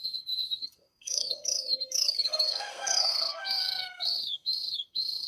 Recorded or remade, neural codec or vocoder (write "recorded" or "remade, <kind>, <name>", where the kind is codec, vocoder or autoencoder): remade, codec, SNAC